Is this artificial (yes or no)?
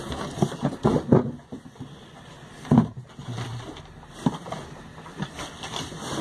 no